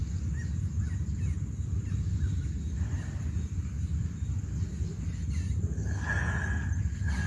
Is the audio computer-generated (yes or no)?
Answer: no